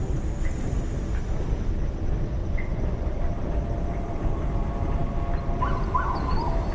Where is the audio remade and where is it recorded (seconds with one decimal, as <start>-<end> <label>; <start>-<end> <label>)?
0.0-2.4 recorded; 2.4-3.1 remade; 3.1-6.7 recorded